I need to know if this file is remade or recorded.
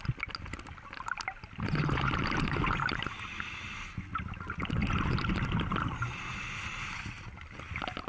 recorded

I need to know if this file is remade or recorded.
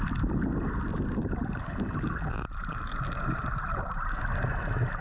recorded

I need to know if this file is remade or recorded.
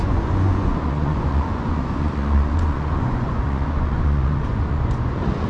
remade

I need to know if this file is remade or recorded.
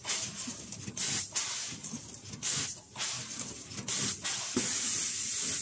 recorded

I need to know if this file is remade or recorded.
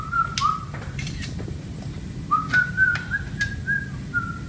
recorded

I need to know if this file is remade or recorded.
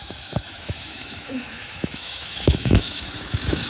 remade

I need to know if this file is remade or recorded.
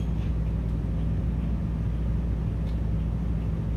recorded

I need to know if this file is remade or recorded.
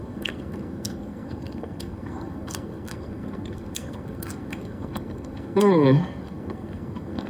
remade